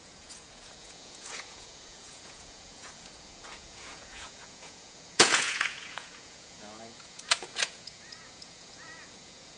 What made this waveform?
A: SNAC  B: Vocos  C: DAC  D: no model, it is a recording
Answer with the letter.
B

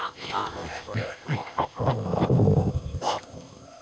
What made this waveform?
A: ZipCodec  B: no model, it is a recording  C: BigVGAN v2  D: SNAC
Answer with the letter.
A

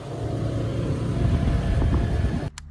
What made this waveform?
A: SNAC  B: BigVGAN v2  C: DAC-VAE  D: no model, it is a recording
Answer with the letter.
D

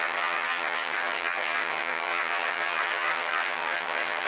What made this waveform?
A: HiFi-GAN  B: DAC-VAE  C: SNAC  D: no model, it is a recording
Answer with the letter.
A